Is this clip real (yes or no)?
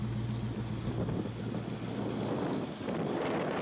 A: yes